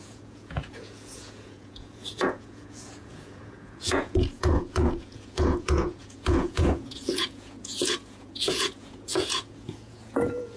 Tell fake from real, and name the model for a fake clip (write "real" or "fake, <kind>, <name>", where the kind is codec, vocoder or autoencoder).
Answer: fake, vocoder, Vocos